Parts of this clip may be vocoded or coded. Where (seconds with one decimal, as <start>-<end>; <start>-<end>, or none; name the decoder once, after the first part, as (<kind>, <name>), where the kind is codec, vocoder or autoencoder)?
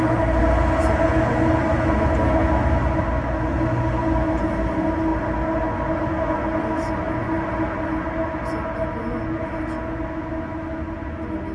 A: none